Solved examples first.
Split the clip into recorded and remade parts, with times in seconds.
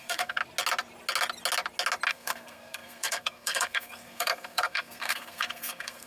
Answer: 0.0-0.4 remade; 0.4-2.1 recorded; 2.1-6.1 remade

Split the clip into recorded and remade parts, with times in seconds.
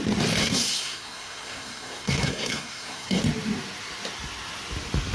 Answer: 0.0-0.4 recorded; 0.4-3.2 remade; 3.2-5.1 recorded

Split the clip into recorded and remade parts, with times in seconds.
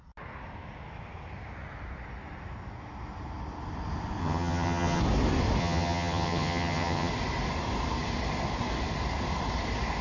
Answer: 0.0-4.2 recorded; 4.2-5.0 remade; 5.0-5.6 recorded; 5.6-7.1 remade; 7.1-10.0 recorded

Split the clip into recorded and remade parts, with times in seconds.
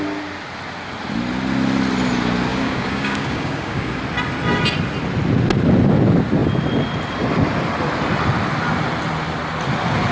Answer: 0.0-2.5 recorded; 2.5-4.0 remade; 4.0-10.1 recorded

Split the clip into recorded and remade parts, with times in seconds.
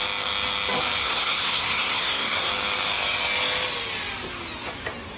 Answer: 0.0-1.0 recorded; 1.0-2.5 remade; 2.5-5.2 recorded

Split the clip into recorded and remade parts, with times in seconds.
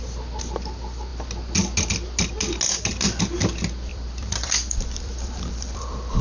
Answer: 0.0-3.9 recorded; 3.9-6.2 remade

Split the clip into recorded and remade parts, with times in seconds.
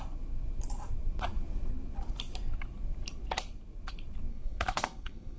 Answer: 0.0-4.3 recorded; 4.3-5.4 remade